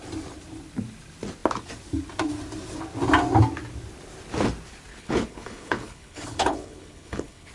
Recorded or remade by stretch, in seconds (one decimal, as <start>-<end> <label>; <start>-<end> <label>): 0.0-4.9 recorded; 4.9-7.5 remade